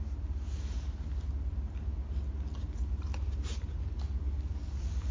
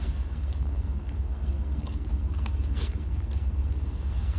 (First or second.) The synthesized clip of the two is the second